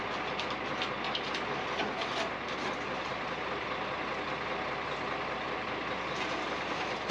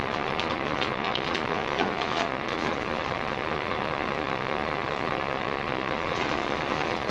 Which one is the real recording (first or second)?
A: first